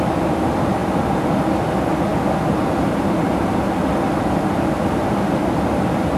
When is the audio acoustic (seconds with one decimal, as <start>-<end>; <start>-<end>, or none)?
0.0-6.2